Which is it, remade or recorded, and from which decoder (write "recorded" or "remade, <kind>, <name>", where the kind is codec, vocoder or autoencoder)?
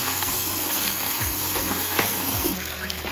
remade, codec, SNAC